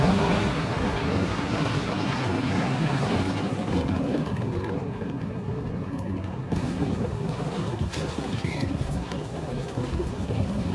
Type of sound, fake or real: fake